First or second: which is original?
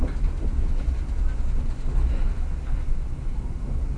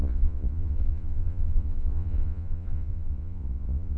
first